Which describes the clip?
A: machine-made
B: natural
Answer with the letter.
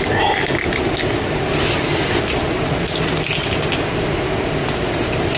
B